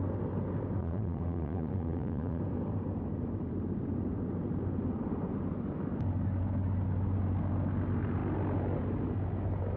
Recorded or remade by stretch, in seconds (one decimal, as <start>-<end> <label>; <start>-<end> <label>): 0.0-0.8 recorded; 0.8-2.4 remade; 2.4-9.8 recorded